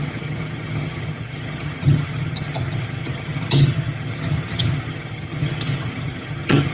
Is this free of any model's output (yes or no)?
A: no